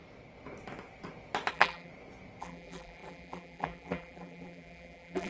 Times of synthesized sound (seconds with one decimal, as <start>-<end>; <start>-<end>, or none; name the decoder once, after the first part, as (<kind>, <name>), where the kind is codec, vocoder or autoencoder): 1.5-1.9 (vocoder, BigVGAN v2); 2.4-5.3